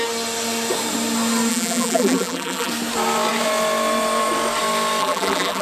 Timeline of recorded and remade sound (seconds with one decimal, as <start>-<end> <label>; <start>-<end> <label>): 0.0-1.5 recorded; 1.5-2.7 remade; 2.7-5.0 recorded; 5.0-5.6 remade